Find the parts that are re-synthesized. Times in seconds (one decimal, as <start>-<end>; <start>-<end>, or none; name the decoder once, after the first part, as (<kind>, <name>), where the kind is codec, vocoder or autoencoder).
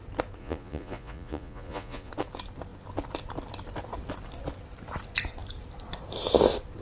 0.4-2.1 (vocoder, Vocos)